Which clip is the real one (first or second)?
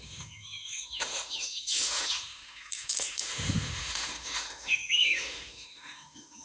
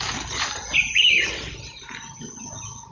second